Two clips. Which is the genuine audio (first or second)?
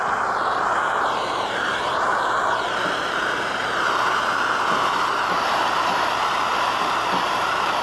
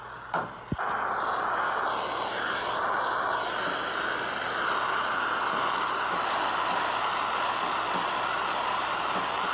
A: second